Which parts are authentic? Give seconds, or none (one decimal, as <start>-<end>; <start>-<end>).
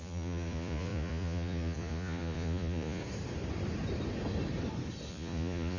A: 3.0-5.1